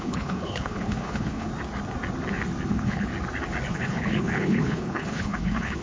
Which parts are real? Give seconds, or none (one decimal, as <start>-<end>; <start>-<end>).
1.5-2.7; 3.1-3.7